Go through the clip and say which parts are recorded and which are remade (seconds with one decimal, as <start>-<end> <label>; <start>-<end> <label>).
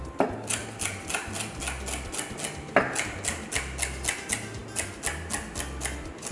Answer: 0.0-6.3 recorded